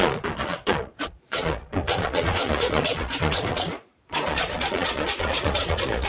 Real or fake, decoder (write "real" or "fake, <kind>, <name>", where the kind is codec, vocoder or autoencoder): fake, vocoder, Vocos